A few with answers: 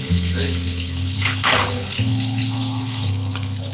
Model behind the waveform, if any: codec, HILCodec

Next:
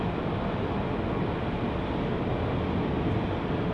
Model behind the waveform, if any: none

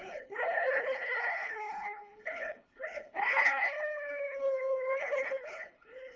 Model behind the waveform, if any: codec, HILCodec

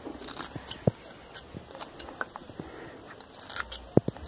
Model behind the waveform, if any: none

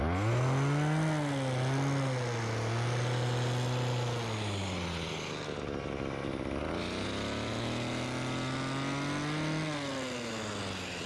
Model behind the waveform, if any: none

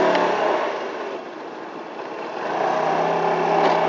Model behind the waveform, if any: none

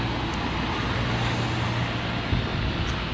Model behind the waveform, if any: none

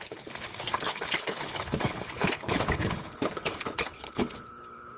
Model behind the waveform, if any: codec, HILCodec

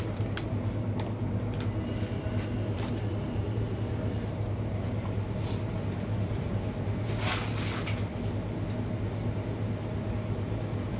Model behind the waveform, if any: none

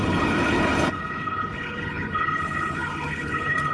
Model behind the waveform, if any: codec, HILCodec